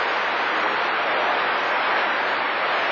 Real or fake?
real